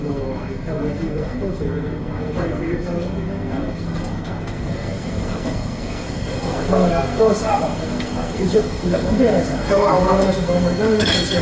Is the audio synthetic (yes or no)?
yes